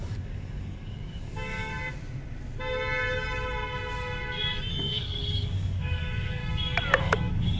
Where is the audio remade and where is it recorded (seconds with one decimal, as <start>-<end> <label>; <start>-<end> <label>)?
0.0-1.7 remade; 1.7-4.7 recorded; 4.7-6.4 remade; 6.4-7.0 recorded; 7.0-7.6 remade